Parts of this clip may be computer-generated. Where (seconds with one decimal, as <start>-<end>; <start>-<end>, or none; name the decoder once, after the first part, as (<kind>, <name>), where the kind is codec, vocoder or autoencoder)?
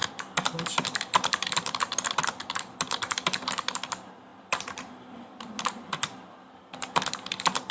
0.0-3.0 (vocoder, BigVGAN v2); 4.3-7.3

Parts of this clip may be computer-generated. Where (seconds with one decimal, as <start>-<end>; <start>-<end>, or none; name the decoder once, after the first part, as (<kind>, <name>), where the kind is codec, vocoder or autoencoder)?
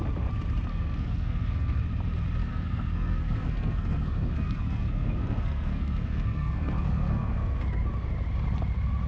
0.7-1.8 (codec, SNAC); 2.5-7.6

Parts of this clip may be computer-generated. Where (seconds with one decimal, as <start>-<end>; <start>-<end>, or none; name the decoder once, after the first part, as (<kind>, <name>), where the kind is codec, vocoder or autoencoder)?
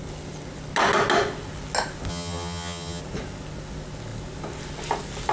2.1-3.0 (vocoder, HiFi-GAN)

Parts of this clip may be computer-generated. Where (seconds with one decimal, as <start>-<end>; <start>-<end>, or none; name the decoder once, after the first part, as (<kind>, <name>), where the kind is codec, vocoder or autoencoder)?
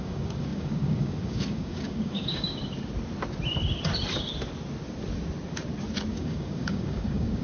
0.0-2.6 (codec, DAC); 6.1-7.4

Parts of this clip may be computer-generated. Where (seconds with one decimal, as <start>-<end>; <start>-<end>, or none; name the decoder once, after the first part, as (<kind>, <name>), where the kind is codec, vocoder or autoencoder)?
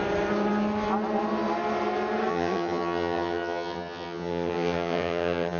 2.3-5.6 (vocoder, HiFi-GAN)